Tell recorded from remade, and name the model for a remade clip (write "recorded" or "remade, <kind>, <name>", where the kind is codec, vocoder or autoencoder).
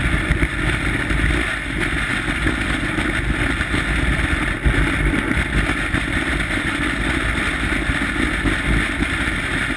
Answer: recorded